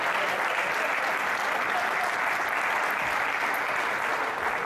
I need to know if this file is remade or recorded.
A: recorded